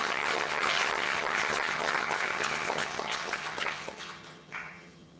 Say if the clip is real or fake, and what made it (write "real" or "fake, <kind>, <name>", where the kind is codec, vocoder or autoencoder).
fake, vocoder, HiFi-GAN